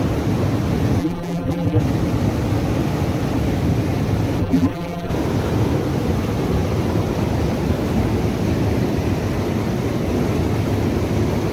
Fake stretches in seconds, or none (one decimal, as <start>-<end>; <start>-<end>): 1.0-1.8; 4.4-5.1